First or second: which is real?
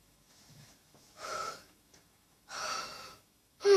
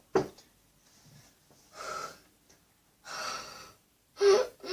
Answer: second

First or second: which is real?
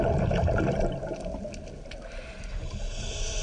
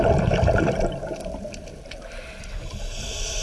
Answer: first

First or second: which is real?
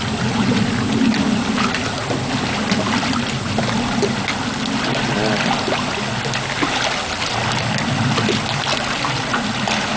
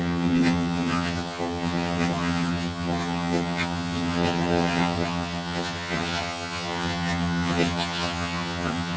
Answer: first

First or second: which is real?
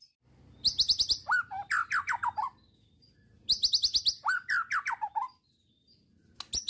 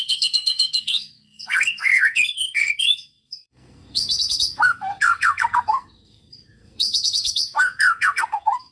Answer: first